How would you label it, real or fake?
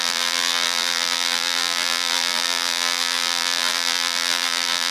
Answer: fake